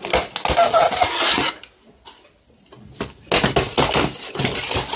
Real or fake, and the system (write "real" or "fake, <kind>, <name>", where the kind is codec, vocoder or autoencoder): real